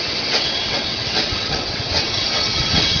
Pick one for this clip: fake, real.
fake